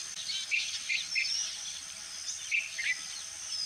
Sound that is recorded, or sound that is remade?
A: recorded